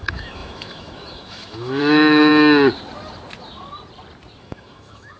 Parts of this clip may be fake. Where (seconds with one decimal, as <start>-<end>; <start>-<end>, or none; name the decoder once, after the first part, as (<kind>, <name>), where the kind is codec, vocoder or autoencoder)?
0.0-2.3 (autoencoder, DAC-VAE); 4.4-5.2